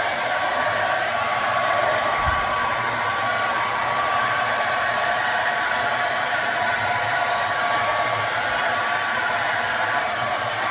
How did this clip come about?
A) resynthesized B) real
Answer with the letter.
A